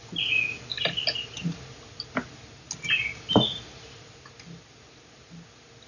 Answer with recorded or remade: recorded